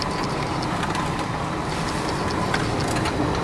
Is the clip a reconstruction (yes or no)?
no